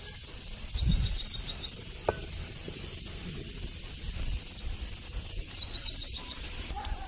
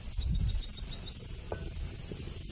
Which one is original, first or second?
second